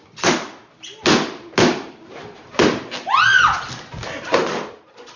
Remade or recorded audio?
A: recorded